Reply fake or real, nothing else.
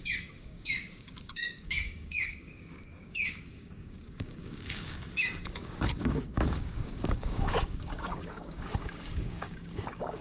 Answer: fake